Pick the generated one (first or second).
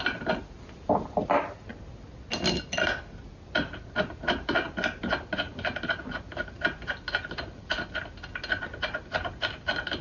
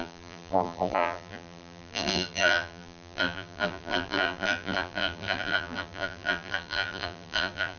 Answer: second